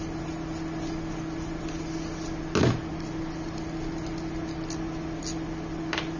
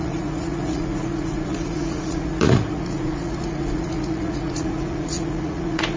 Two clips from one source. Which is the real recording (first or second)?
first